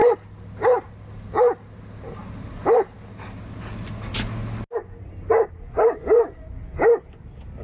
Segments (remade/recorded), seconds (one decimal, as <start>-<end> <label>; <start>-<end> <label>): 0.0-7.6 recorded